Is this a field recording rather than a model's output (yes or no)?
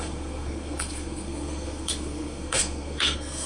no